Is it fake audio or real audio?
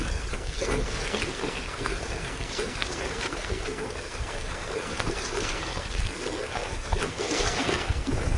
fake